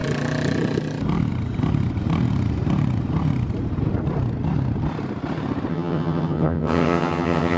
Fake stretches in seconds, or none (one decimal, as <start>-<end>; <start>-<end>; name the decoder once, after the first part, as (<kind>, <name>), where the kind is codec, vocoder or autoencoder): 5.7-7.6 (vocoder, HiFi-GAN)